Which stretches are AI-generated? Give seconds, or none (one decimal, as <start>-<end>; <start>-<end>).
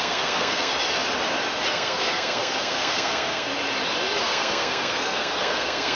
0.0-0.7; 1.7-3.5; 4.2-5.9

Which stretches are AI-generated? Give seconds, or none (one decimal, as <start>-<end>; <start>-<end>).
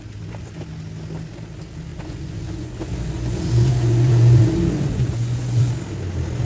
1.9-5.7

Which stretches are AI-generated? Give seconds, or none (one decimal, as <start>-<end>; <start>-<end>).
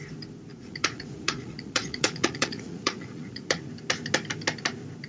0.5-3.6